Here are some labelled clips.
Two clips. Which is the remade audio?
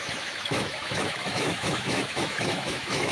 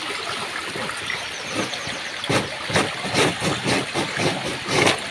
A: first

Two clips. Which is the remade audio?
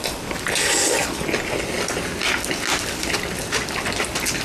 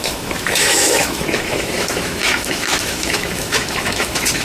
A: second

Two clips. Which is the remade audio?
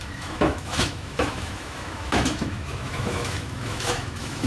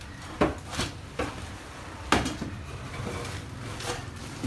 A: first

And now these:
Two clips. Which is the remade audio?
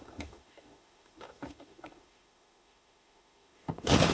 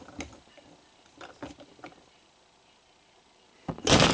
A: first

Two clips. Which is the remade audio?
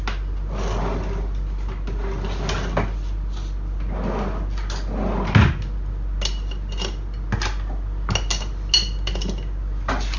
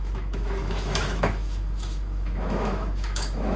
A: second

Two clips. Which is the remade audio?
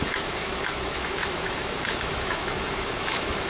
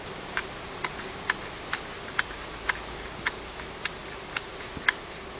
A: first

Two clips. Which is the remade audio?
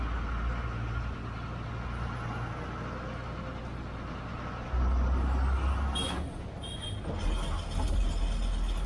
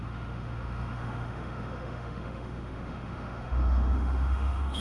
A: second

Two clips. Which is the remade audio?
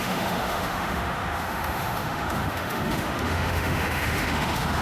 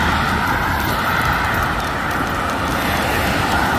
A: first